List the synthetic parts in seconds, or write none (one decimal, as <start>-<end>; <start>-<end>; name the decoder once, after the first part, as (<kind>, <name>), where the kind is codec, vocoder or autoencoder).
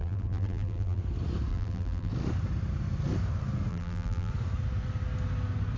0.0-1.0 (vocoder, BigVGAN v2); 1.5-2.1; 3.7-4.3